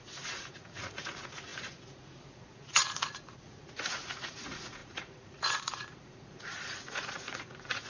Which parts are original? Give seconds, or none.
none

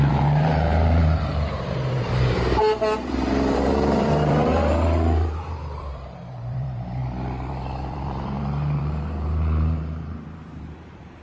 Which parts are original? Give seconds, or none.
7.0-7.5

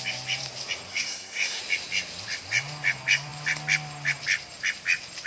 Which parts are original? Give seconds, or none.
0.0-0.9; 1.6-5.3